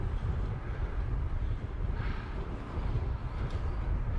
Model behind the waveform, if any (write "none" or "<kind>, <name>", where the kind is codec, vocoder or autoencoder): none